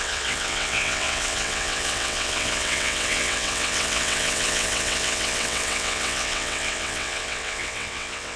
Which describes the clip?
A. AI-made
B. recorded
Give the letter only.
A